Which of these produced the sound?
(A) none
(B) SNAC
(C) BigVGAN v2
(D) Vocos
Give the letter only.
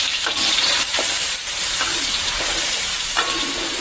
C